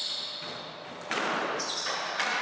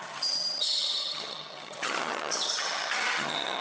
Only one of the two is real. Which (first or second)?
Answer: first